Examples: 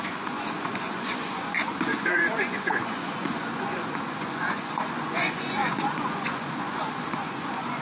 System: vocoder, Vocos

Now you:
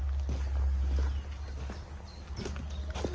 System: none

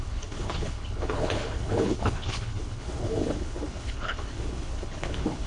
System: codec, HILCodec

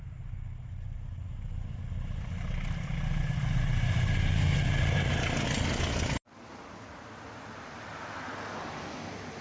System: none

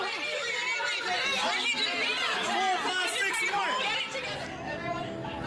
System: none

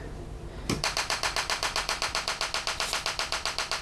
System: none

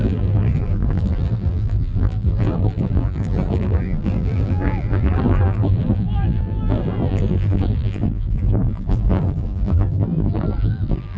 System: vocoder, BigVGAN v2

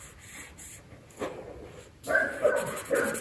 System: none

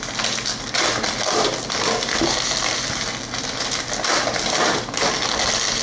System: none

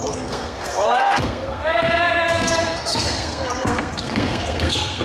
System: codec, SNAC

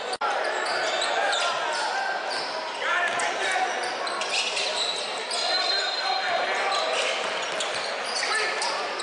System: none